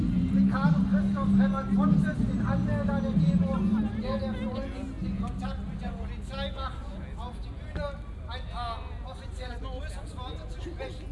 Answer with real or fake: real